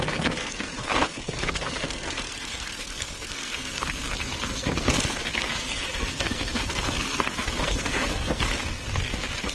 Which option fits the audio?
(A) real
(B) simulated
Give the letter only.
B